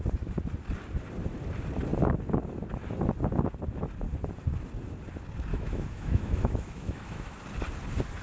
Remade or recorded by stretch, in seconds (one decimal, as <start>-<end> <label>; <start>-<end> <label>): 0.0-5.5 recorded; 5.5-7.4 remade; 7.4-8.2 recorded